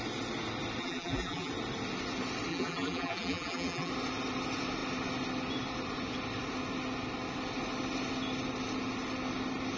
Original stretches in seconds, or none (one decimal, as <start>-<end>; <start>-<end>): 0.0-0.8; 1.5-2.5; 3.9-9.8